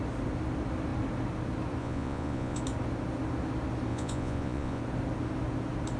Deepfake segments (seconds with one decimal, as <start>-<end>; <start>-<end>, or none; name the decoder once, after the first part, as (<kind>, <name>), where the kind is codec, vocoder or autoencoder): 1.8-2.6 (vocoder, Vocos); 3.9-4.8